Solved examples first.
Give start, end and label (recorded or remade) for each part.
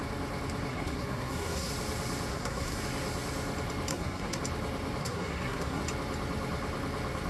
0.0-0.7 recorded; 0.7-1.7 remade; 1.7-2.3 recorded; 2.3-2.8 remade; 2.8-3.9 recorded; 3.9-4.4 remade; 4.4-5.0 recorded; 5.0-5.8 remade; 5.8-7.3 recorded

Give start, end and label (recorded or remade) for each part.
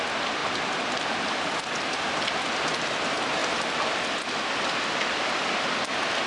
0.0-6.3 recorded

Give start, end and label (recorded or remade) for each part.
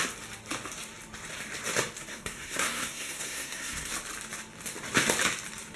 0.0-2.1 recorded; 2.1-3.9 remade; 3.9-5.8 recorded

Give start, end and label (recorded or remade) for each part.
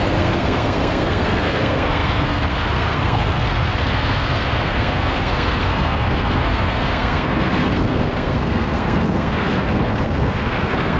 0.0-11.0 remade